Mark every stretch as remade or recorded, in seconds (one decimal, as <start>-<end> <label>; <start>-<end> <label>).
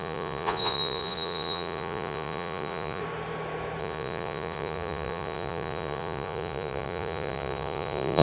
0.0-3.0 remade; 3.0-3.8 recorded; 3.8-8.2 remade